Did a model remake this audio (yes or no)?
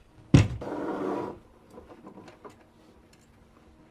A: yes